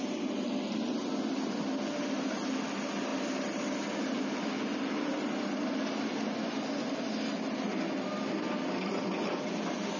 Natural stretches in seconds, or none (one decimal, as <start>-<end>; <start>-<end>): 0.0-10.0